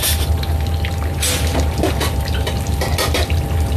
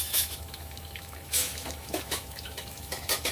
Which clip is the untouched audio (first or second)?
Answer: first